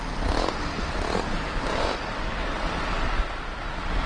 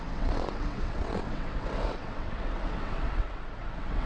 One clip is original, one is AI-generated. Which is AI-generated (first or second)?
second